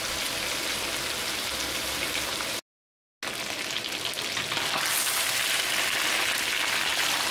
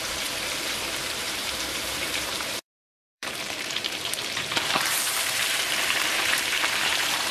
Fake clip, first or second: second